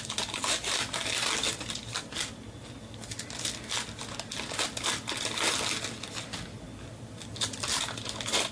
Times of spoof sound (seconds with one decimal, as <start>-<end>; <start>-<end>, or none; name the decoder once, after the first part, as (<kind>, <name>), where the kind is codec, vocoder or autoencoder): none